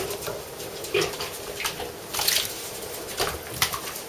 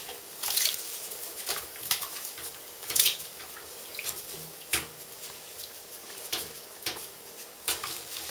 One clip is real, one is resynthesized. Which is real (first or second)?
first